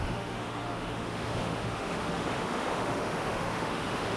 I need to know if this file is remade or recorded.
remade